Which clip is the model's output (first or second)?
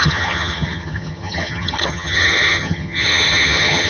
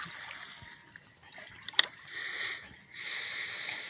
first